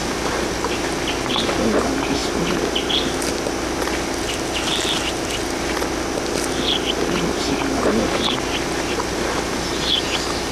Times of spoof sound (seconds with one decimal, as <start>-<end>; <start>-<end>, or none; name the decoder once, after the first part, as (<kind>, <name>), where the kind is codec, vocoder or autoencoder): none